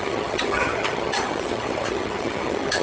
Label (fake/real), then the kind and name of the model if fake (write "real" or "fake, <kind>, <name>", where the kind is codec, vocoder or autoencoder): fake, vocoder, HiFi-GAN